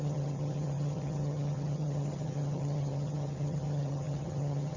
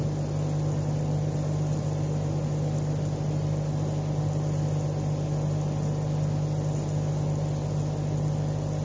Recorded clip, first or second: second